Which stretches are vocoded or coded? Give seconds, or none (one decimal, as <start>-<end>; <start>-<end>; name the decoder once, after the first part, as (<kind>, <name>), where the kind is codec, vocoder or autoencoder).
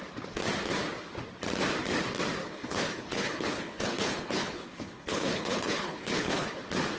2.4-6.6 (codec, HILCodec)